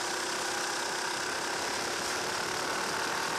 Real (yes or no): yes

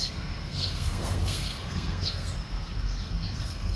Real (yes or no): no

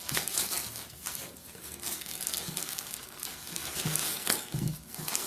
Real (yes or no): no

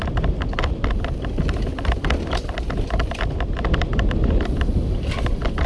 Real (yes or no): yes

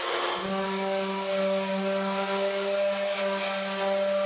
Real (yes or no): yes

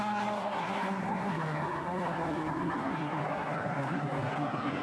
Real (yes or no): no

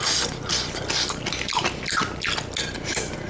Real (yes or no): yes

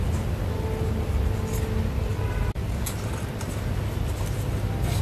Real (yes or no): yes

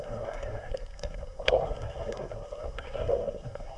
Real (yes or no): no